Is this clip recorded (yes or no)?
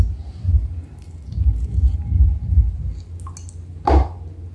yes